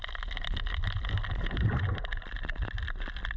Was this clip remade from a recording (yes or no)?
no